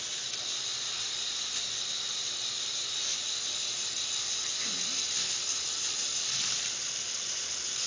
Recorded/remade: recorded